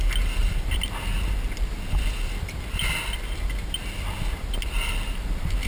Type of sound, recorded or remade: recorded